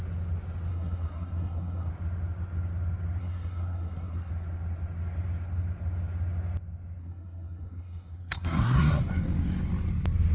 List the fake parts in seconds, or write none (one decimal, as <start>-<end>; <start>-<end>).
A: 0.7-1.9; 3.2-4.3; 7.0-9.0